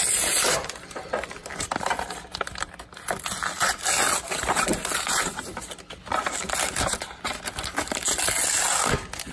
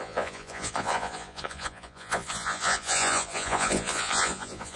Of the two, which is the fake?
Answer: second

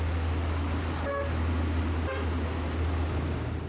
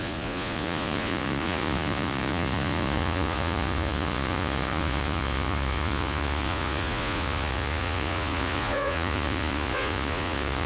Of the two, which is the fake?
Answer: second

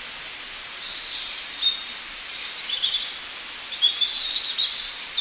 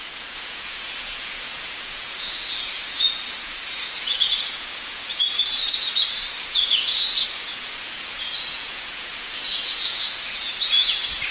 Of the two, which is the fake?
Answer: second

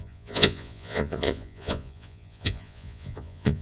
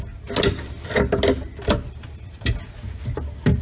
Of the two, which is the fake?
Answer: first